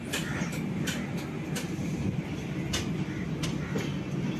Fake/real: real